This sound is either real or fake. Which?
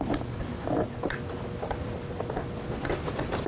real